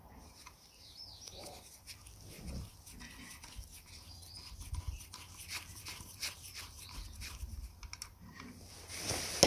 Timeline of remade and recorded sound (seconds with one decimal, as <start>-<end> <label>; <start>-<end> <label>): 0.0-1.0 remade; 1.0-5.5 recorded; 5.5-8.7 remade; 8.7-9.5 recorded